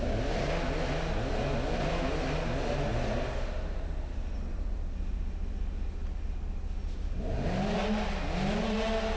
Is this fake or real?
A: real